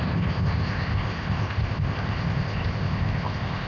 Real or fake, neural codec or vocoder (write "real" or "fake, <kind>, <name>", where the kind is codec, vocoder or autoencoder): fake, codec, ZipCodec